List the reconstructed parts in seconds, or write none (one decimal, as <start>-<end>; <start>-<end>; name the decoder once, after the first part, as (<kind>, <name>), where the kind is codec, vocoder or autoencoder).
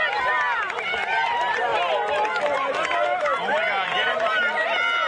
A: none